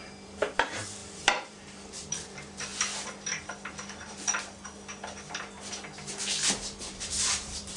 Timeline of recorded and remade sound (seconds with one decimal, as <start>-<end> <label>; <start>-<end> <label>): 0.0-2.7 remade; 2.7-6.9 recorded; 6.9-7.8 remade